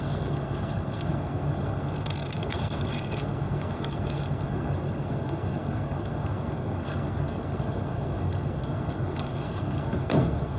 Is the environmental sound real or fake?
fake